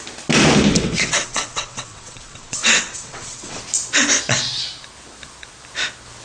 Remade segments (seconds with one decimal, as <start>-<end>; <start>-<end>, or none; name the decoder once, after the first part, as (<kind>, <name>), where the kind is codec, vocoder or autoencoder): 0.7-3.6 (vocoder, WaveNeXt)